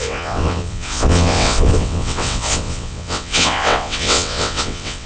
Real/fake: fake